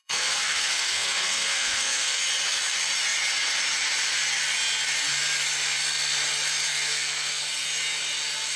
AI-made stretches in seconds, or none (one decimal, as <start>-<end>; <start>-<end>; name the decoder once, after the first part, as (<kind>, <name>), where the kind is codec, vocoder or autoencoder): 0.0-2.2 (codec, SNAC); 6.7-7.4